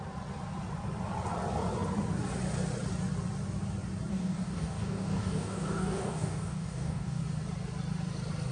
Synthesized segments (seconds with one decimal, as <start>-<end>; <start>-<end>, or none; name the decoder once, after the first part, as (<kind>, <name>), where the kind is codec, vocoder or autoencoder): 4.1-7.2 (codec, DAC)